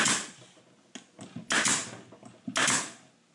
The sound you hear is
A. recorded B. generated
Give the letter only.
A